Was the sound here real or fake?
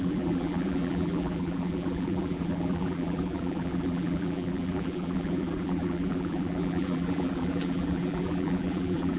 fake